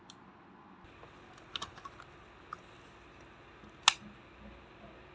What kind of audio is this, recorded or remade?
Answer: recorded